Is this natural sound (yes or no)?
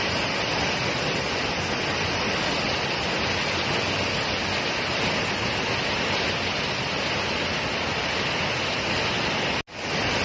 yes